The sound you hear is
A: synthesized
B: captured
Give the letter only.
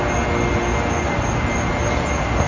B